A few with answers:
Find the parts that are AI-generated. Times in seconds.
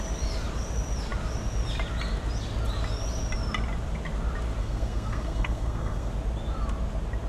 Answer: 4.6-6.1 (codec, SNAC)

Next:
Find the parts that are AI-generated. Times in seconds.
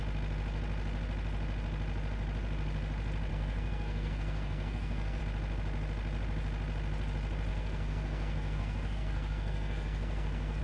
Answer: 3.3-5.2 (codec, SNAC); 7.5-10.6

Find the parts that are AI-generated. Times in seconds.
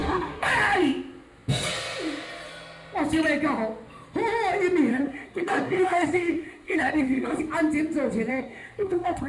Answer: 0.0-0.5 (codec, SNAC); 4.9-7.4; 8.3-9.3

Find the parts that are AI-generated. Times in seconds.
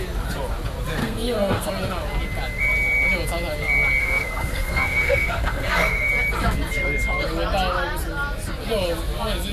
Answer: 1.0-1.7 (codec, SNAC); 4.0-6.1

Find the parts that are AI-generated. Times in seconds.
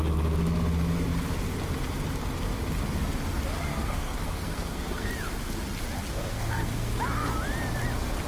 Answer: 3.7-5.1 (codec, SNAC); 6.0-7.0